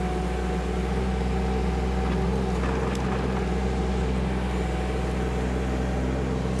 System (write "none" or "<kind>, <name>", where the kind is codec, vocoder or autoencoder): none